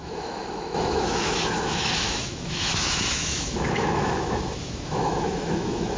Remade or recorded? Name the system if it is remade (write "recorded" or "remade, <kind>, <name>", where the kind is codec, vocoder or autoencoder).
remade, autoencoder, DAC-VAE